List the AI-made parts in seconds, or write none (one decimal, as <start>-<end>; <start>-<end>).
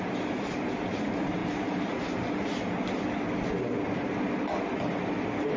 none